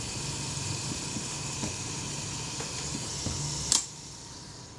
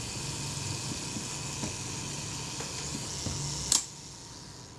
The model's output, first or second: first